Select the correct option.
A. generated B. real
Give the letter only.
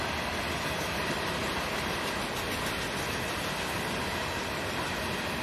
B